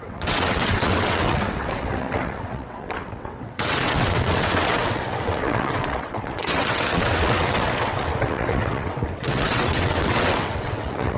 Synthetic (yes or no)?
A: yes